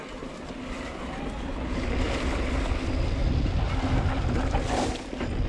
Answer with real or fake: real